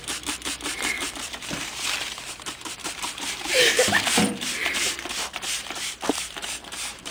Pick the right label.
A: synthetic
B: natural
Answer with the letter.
A